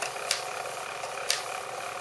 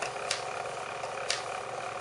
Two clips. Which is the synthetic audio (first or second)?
first